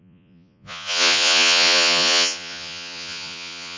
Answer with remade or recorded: remade